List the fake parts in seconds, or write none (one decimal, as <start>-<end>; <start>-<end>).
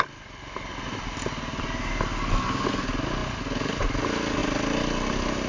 none